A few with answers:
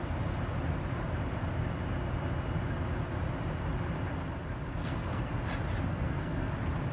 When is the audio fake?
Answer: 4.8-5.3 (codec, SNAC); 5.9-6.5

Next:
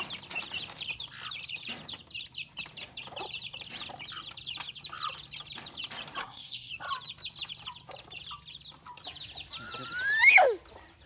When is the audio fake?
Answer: 6.2-6.7 (codec, SNAC)

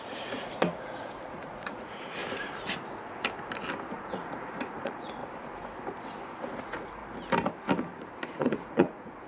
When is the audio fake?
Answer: 0.0-2.2 (vocoder, Vocos); 3.9-5.2; 6.6-7.0; 8.3-9.3

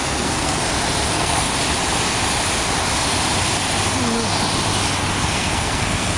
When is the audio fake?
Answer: 0.0-0.6 (codec, SNAC); 1.1-1.5; 5.2-6.2

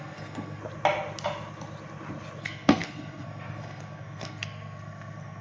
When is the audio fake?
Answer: 0.0-0.6 (codec, SNAC); 2.4-5.4

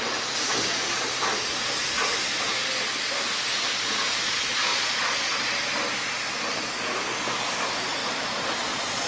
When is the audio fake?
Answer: 4.7-5.3 (vocoder, Vocos); 8.0-9.1

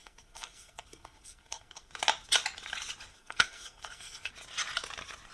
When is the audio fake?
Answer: 0.0-1.9 (codec, SNAC); 3.1-4.3